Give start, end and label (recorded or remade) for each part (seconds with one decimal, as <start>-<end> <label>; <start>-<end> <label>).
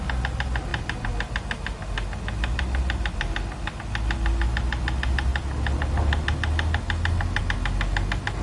0.0-8.4 recorded